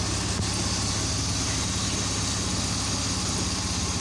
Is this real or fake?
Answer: real